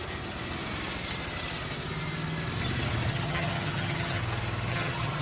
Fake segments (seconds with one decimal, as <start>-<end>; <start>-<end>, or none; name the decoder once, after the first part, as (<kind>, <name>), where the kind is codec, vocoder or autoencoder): 3.1-4.2 (vocoder, HiFi-GAN); 4.7-5.2